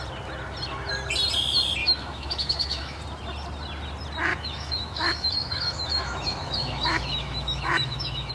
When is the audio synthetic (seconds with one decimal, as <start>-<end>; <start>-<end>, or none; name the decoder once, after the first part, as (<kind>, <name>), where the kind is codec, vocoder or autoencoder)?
1.8-3.0 (autoencoder, DAC-VAE); 4.3-8.3